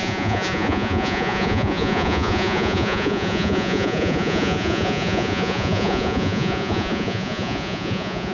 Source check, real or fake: fake